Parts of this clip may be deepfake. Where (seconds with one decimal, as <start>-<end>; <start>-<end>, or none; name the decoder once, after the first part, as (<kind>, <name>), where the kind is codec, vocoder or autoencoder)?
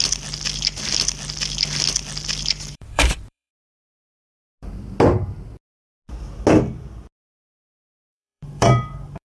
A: 2.7-3.5 (vocoder, BigVGAN v2); 8.0-9.2